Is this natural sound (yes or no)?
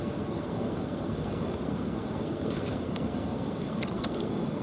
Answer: no